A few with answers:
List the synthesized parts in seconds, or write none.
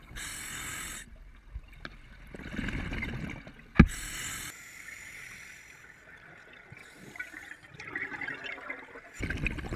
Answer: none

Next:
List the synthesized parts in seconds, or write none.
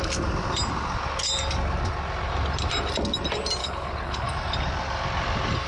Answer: 3.6-4.3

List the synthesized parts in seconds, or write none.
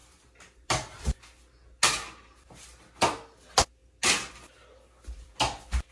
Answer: none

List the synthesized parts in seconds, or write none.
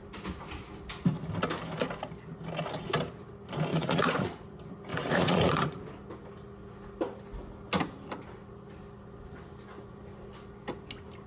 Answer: 3.7-4.5; 4.9-5.9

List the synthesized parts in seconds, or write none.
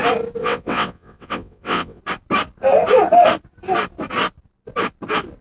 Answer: 0.4-2.0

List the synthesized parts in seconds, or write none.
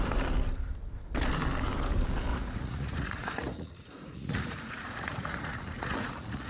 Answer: 2.3-6.5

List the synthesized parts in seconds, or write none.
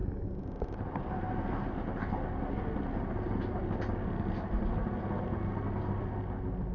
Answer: none